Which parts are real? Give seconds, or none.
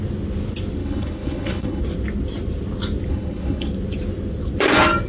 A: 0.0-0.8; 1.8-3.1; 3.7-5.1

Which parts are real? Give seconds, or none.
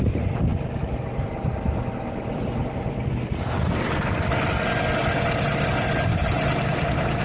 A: 0.0-7.2